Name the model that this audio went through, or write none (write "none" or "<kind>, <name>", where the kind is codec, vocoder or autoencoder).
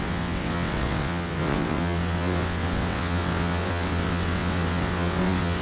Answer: vocoder, WaveNeXt